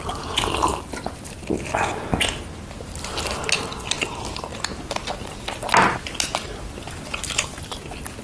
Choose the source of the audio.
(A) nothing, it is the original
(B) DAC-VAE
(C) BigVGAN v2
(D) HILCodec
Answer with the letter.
A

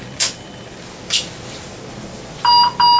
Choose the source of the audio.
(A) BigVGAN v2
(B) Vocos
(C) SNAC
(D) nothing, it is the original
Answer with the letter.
D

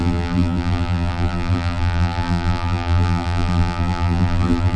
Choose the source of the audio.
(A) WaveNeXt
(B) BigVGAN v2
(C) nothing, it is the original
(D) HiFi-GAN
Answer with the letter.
B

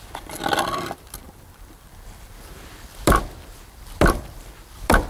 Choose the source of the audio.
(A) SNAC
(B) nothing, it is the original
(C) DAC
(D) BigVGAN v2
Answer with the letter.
D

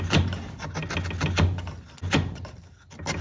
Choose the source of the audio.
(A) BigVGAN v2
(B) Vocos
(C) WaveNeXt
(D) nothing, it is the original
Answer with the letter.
D